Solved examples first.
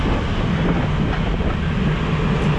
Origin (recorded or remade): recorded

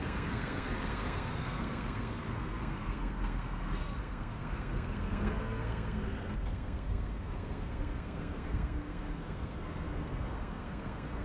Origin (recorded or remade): remade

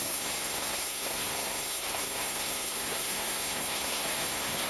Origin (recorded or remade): remade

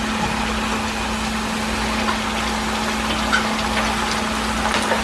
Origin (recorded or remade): recorded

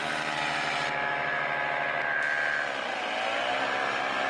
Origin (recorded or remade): recorded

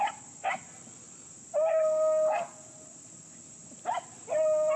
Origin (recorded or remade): recorded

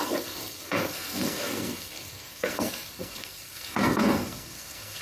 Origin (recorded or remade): remade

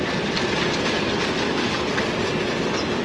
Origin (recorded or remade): recorded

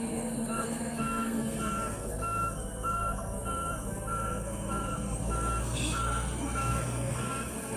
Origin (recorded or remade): remade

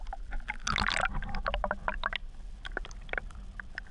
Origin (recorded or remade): recorded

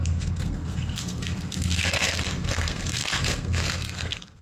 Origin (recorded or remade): remade